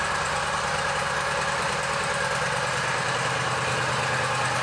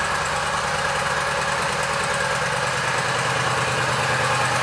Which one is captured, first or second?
second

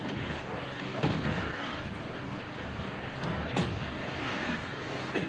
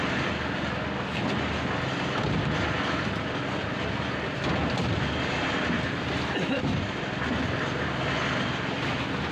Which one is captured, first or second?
second